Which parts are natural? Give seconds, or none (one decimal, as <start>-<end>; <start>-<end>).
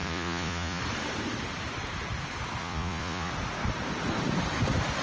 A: 0.8-2.6; 3.3-5.0